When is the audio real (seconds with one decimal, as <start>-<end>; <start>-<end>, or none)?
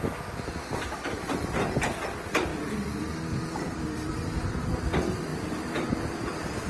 none